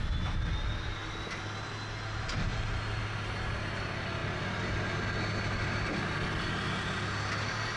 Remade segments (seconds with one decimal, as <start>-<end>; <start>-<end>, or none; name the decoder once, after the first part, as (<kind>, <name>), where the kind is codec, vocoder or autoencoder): none